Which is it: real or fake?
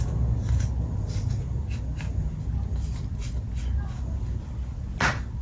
real